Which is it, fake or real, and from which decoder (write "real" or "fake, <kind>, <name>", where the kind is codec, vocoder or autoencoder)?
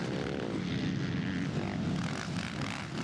real